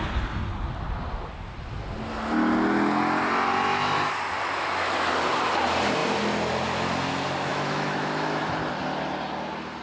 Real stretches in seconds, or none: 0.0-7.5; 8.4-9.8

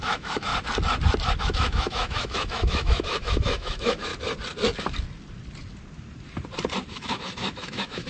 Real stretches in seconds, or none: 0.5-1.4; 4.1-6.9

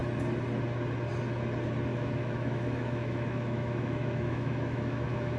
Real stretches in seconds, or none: 0.0-1.9

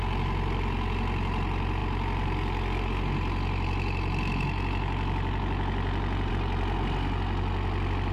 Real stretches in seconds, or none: 0.0-8.1

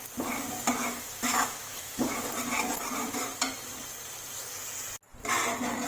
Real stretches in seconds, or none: 0.0-0.8; 2.2-5.9